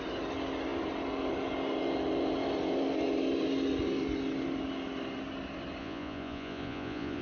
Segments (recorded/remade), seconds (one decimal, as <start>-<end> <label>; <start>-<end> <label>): 0.0-5.8 recorded; 5.8-7.2 remade